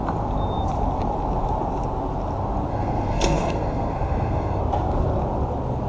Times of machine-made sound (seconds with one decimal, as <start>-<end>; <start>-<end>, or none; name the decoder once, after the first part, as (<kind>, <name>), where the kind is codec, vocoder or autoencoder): 2.7-4.6 (codec, SNAC)